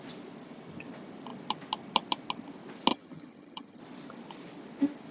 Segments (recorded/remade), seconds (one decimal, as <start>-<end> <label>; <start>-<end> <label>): 0.0-2.9 recorded; 2.9-3.8 remade; 3.8-5.1 recorded